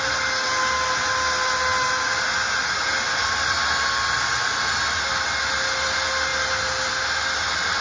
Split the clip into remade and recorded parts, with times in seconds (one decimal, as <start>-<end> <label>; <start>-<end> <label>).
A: 0.0-7.8 recorded